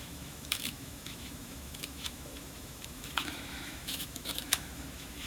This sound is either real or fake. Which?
fake